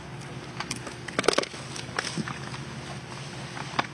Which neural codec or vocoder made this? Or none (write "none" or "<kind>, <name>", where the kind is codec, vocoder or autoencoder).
none